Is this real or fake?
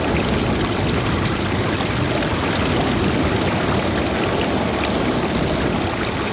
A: real